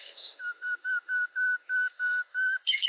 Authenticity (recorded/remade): remade